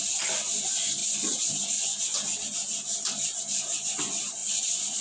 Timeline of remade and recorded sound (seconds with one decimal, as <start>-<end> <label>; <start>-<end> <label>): 0.0-5.0 recorded